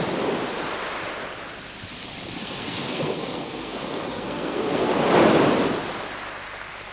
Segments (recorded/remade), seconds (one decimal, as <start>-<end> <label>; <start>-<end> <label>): 0.0-2.4 recorded; 2.4-4.9 remade; 4.9-6.9 recorded